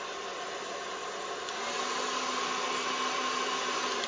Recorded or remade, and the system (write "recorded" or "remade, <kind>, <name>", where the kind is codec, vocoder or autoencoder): recorded